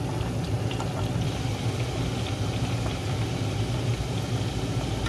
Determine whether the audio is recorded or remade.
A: recorded